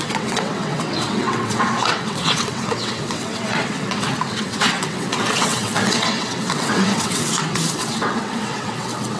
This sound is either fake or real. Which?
fake